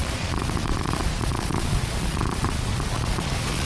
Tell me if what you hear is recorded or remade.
remade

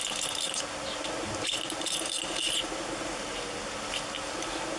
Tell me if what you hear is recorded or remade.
recorded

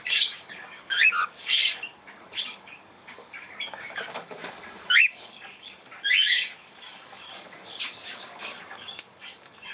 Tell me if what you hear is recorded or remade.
remade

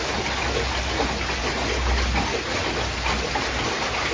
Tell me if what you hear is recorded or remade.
recorded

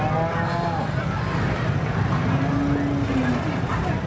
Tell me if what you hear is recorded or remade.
recorded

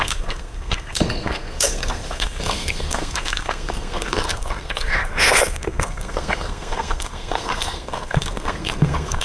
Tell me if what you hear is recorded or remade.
remade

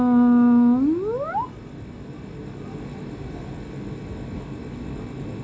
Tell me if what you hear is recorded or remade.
recorded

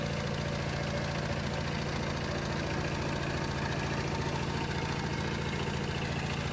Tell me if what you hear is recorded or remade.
recorded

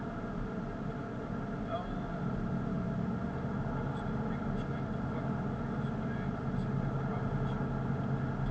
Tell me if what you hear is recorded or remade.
recorded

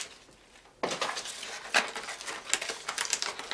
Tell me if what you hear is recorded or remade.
recorded